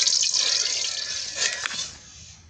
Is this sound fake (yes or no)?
no